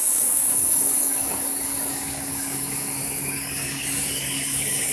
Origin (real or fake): fake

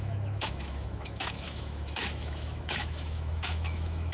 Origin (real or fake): fake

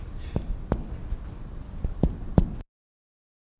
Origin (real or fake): real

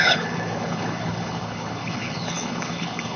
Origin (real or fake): fake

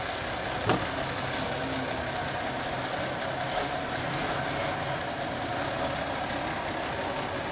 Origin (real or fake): real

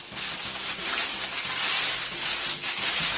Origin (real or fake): real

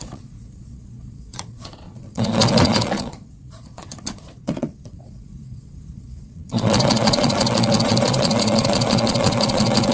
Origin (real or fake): fake